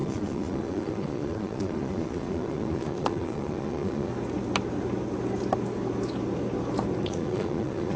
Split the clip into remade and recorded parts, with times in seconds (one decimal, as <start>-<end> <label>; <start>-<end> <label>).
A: 0.0-4.1 remade; 4.1-7.0 recorded; 7.0-8.0 remade

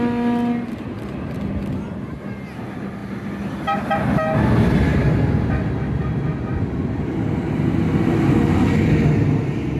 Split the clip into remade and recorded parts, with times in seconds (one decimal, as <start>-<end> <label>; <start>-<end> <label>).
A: 0.0-9.8 recorded

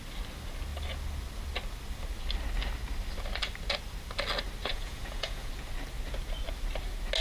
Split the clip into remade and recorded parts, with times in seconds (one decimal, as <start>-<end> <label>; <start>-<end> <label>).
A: 0.0-4.7 recorded; 4.7-5.5 remade; 5.5-7.2 recorded

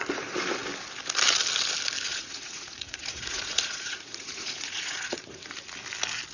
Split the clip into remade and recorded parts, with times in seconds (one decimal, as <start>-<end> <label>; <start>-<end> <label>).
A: 0.0-2.1 recorded; 2.1-5.5 remade; 5.5-6.3 recorded

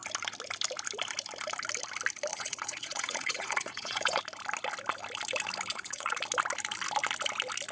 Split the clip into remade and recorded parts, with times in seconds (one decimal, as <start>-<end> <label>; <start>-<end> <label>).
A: 0.0-2.3 recorded; 2.3-4.2 remade; 4.2-5.7 recorded; 5.7-6.2 remade; 6.2-7.7 recorded